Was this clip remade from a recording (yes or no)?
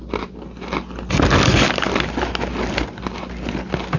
no